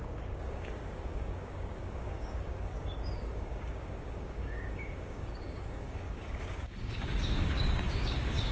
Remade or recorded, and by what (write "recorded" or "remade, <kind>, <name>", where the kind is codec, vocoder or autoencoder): remade, codec, DAC